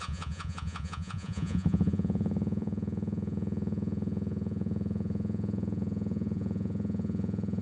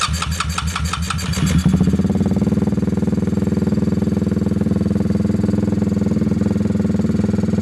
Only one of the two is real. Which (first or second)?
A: second